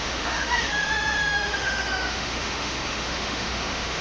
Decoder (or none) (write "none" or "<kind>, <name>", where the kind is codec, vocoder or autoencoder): autoencoder, DAC-VAE